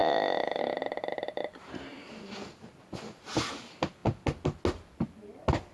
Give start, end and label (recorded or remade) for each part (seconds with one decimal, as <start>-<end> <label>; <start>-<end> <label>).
0.0-0.6 remade; 0.6-5.7 recorded